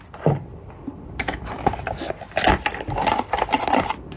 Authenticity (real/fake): real